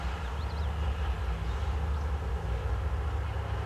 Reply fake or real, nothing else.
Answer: real